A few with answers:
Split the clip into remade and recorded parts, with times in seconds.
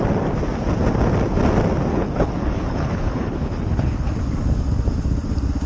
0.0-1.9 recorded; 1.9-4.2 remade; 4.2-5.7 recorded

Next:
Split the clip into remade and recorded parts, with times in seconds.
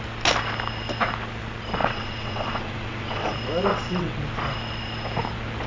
0.0-1.8 recorded; 1.8-3.3 remade; 3.3-3.7 recorded; 3.7-4.2 remade; 4.2-5.7 recorded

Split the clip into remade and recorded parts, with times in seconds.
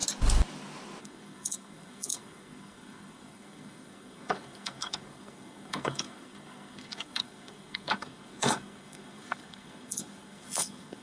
0.0-1.0 recorded; 1.0-11.0 remade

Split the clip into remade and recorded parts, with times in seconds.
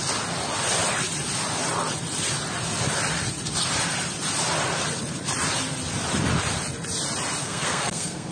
0.0-7.4 recorded; 7.4-8.3 remade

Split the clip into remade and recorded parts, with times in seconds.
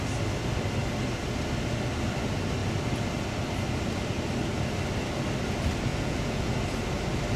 0.0-5.9 recorded; 5.9-6.5 remade; 6.5-7.4 recorded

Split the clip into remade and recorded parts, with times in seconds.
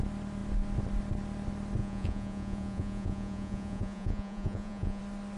0.0-1.8 recorded; 1.8-5.0 remade; 5.0-5.4 recorded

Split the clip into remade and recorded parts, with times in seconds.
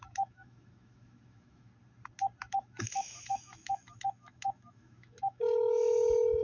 0.0-1.7 remade; 1.7-2.5 recorded; 2.5-6.4 remade